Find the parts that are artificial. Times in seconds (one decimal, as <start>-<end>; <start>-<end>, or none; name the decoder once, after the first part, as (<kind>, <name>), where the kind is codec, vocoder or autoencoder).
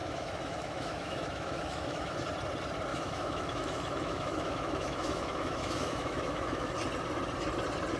0.0-2.1 (autoencoder, DAC-VAE); 2.9-6.7